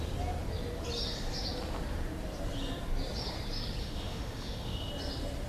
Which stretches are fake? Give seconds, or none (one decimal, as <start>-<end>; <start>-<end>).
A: 3.8-4.9